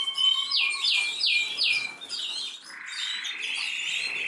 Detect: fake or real real